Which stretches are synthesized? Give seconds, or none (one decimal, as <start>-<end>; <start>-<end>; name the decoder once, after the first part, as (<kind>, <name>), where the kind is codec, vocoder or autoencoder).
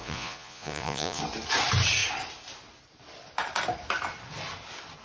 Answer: 0.0-1.2 (vocoder, Vocos)